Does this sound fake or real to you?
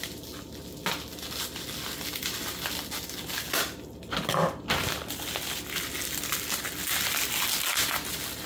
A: real